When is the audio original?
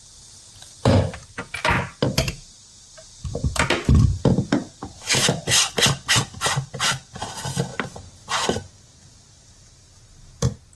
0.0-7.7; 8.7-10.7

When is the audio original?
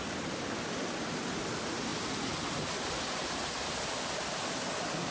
0.0-5.1